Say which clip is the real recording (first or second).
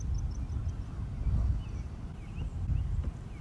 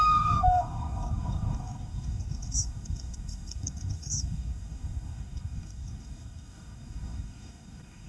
first